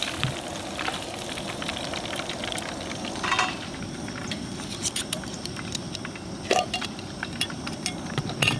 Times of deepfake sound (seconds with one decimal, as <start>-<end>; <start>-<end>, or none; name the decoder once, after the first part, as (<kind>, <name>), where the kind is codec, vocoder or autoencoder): 4.2-5.5 (vocoder, BigVGAN v2)